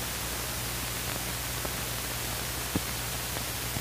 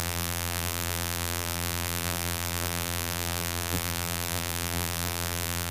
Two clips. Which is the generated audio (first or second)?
second